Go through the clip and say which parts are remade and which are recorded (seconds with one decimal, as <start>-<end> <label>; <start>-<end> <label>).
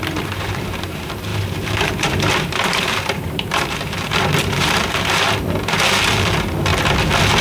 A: 0.0-6.7 remade; 6.7-7.4 recorded